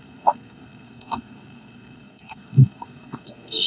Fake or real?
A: fake